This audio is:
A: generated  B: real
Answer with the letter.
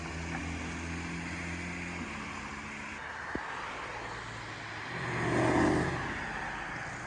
B